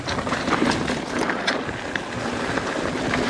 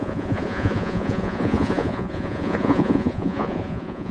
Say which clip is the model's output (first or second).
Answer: second